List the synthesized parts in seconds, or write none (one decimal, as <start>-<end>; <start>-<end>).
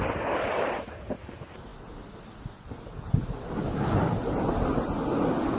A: none